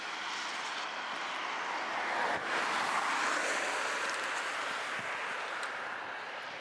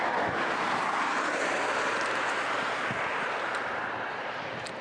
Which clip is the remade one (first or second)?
first